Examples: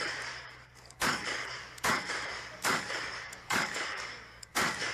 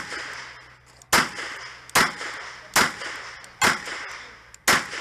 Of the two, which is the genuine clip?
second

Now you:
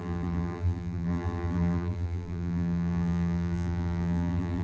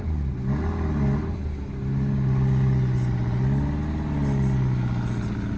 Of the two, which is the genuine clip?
second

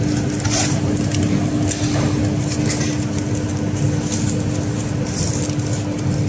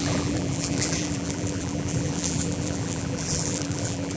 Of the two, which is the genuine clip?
first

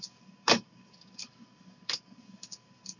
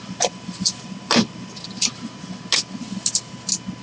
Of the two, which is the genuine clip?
second